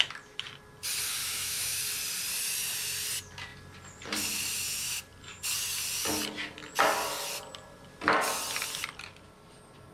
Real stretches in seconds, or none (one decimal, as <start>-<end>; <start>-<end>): 0.0-1.2; 1.8-9.9